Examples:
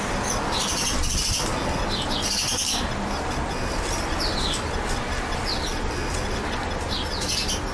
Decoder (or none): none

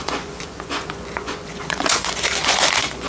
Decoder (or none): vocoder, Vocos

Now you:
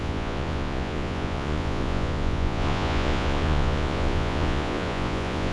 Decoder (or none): vocoder, Vocos